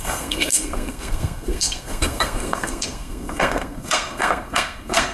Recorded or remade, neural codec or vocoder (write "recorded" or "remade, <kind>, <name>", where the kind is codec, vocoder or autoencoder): remade, codec, SNAC